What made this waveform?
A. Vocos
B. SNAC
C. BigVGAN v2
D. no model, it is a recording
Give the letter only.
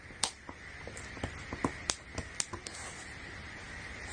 D